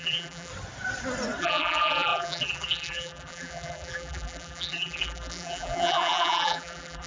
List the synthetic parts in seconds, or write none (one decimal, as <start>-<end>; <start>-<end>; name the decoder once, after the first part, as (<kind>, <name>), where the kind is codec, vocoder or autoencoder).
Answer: 0.0-0.5 (vocoder, BigVGAN v2); 1.4-7.1